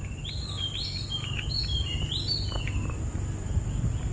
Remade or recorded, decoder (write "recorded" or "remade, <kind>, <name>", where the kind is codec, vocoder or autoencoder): recorded